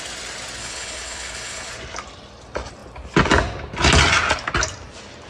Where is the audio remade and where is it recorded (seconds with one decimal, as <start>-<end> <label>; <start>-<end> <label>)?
0.0-0.6 recorded; 0.6-1.7 remade; 1.7-5.3 recorded